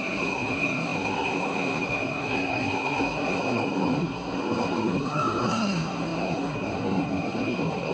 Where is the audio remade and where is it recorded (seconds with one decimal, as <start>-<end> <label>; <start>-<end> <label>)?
0.0-7.9 remade

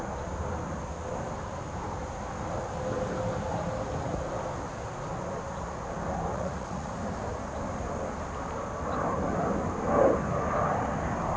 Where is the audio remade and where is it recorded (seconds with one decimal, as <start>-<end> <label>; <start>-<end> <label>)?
0.0-6.3 recorded; 6.3-6.9 remade; 6.9-11.4 recorded

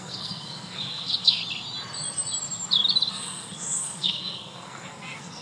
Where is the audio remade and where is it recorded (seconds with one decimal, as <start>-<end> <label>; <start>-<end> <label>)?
0.0-1.4 remade; 1.4-3.1 recorded; 3.1-5.4 remade

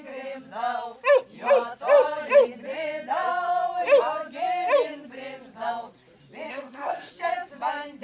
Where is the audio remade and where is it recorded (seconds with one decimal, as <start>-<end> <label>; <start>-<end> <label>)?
0.0-6.5 recorded; 6.5-7.1 remade; 7.1-8.0 recorded

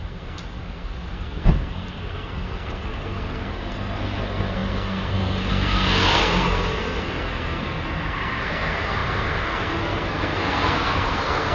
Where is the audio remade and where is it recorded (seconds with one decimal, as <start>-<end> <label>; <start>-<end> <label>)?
0.0-11.5 remade

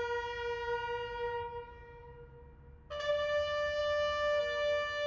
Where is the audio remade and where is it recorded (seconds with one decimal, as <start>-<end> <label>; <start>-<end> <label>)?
0.0-5.1 recorded

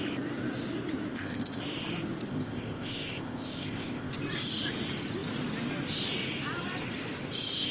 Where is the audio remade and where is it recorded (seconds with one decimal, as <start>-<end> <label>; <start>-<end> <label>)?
0.0-1.1 recorded; 1.1-1.6 remade; 1.6-2.3 recorded; 2.3-4.1 remade; 4.1-7.7 recorded

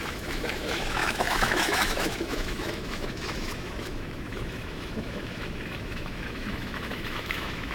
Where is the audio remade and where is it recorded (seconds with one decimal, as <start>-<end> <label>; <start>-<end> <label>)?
0.0-7.7 remade